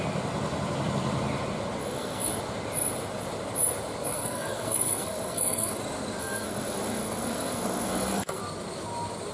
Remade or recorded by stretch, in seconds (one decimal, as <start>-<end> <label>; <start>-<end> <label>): 0.0-1.8 recorded; 1.8-2.4 remade; 2.4-4.1 recorded; 4.1-5.7 remade; 5.7-6.2 recorded; 6.2-8.4 remade; 8.4-9.3 recorded